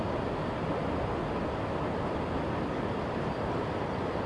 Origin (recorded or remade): recorded